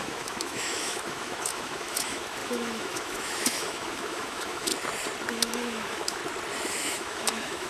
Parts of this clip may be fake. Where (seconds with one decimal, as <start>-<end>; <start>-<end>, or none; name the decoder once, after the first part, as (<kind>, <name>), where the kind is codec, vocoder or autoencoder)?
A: 0.0-4.7 (autoencoder, DAC-VAE); 5.3-6.2; 6.7-7.7